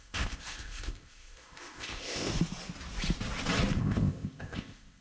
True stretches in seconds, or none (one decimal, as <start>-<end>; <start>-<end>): 2.3-3.8

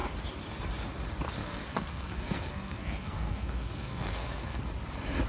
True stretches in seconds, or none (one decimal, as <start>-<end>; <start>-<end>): 0.0-1.4; 4.6-5.3

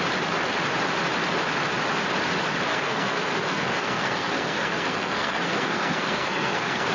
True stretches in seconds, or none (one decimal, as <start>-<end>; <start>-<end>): 0.0-2.7

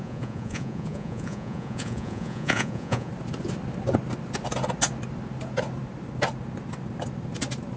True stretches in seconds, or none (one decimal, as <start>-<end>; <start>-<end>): 3.1-7.8